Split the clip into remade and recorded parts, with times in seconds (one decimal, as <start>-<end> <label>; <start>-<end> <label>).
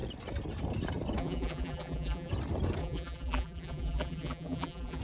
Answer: 0.0-1.2 recorded; 1.2-2.3 remade; 2.3-2.8 recorded; 2.8-5.0 remade